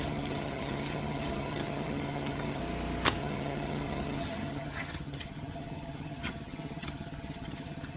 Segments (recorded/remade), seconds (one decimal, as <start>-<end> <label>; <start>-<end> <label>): 0.0-2.6 remade; 2.6-3.2 recorded; 3.2-8.0 remade